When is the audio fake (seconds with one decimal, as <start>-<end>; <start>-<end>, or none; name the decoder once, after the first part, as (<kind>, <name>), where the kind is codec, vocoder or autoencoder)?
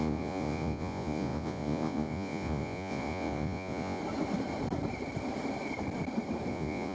0.0-4.0 (vocoder, Vocos); 6.5-6.9